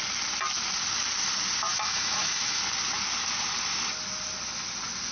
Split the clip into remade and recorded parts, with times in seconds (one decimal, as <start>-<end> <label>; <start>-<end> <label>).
0.0-1.7 recorded; 1.7-2.6 remade; 2.6-5.1 recorded